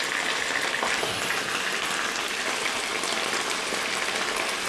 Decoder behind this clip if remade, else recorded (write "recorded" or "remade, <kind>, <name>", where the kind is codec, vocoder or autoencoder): recorded